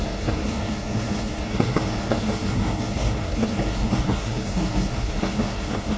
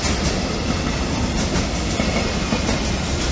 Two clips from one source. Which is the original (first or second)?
second